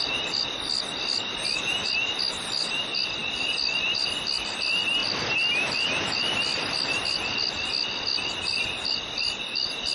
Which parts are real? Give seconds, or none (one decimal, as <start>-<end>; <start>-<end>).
0.0-9.9